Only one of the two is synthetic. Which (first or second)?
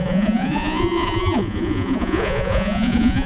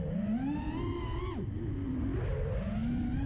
first